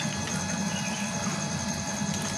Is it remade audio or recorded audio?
recorded